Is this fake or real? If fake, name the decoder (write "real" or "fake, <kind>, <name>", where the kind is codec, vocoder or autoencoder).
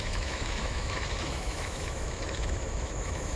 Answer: fake, autoencoder, DAC-VAE